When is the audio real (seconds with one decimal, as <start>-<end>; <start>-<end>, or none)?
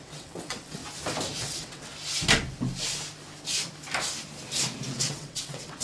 0.8-1.4; 1.9-4.9